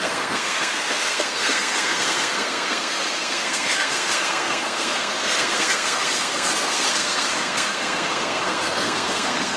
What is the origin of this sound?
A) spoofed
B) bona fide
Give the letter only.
A